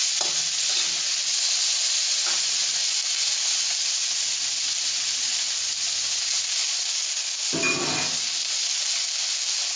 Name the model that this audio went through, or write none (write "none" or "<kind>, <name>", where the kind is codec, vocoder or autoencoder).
none